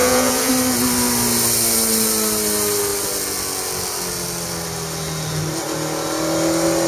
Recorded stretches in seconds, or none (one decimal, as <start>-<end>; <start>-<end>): 0.5-6.9